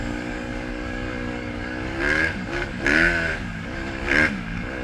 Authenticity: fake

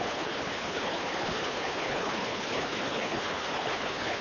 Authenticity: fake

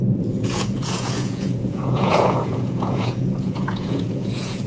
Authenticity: fake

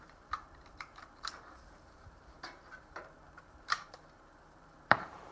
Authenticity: fake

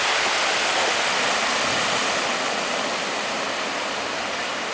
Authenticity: real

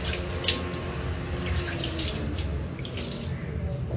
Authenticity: real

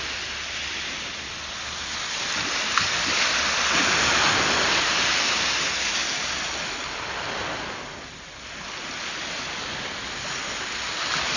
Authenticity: real